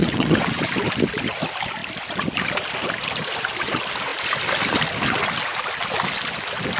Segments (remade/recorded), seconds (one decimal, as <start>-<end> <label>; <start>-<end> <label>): 0.0-0.6 remade; 0.6-6.8 recorded